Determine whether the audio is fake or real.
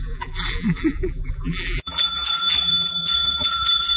fake